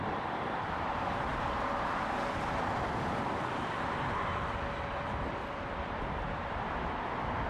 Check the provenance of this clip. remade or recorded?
remade